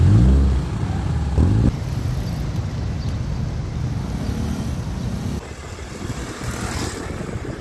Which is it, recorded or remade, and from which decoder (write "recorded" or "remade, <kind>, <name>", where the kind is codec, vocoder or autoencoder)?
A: recorded